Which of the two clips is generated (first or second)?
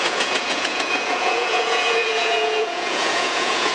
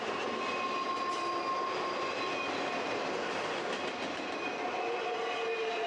first